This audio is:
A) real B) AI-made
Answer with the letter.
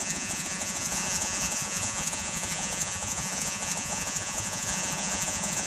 B